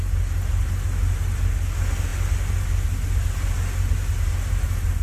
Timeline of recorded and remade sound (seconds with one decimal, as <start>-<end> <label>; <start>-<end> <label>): 0.0-5.0 recorded